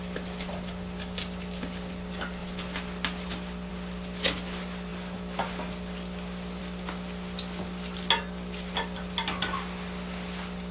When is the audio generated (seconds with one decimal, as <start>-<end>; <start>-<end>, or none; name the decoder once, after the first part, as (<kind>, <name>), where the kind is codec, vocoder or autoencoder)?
none